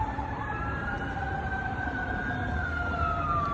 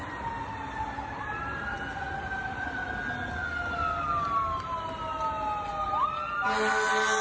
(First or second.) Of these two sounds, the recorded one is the second